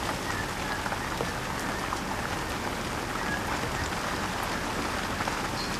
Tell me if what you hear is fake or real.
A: real